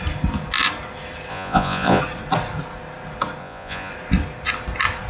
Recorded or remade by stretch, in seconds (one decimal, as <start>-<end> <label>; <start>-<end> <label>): 0.0-1.3 recorded; 1.3-2.0 remade; 2.0-3.4 recorded; 3.4-3.9 remade; 3.9-5.1 recorded